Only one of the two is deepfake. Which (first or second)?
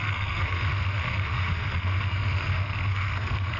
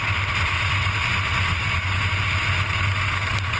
first